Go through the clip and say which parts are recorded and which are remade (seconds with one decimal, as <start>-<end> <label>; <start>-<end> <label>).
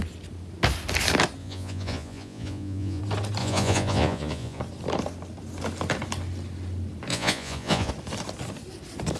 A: 0.0-1.4 recorded; 1.4-3.0 remade; 3.0-3.4 recorded; 3.4-4.6 remade; 4.6-7.1 recorded; 7.1-7.9 remade; 7.9-9.2 recorded